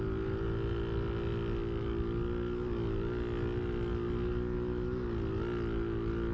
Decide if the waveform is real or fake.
real